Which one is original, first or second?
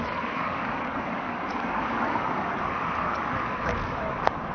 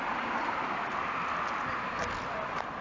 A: second